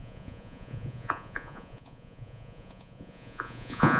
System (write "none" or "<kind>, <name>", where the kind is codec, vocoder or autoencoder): vocoder, Vocos